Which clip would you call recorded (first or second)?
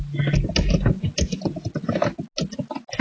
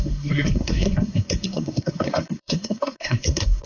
first